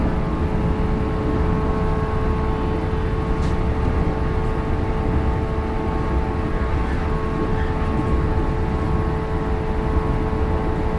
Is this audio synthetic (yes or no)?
no